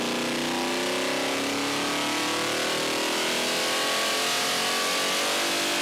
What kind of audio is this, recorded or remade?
recorded